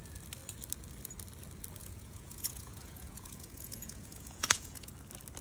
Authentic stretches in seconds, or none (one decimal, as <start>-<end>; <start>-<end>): 0.0-1.8; 4.9-5.4